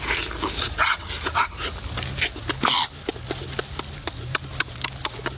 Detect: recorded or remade recorded